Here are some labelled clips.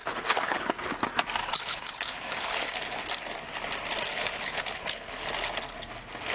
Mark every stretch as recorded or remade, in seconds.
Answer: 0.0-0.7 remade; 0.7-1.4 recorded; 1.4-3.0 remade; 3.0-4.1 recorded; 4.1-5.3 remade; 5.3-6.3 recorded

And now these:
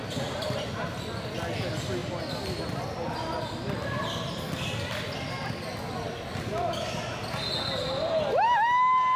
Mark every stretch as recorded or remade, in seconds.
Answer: 0.0-9.2 recorded